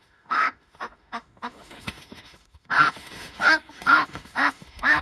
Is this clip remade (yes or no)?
yes